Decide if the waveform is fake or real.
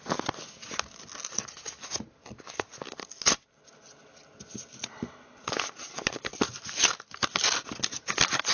real